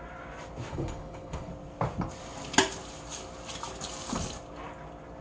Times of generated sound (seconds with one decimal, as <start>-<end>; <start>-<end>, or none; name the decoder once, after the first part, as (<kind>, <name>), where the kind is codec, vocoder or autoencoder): 0.7-1.5 (codec, HILCodec)